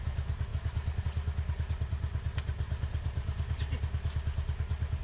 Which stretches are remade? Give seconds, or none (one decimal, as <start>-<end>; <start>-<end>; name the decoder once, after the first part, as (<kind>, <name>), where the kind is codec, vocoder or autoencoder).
none